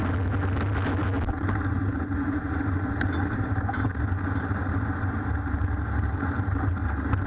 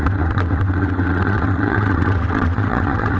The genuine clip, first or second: first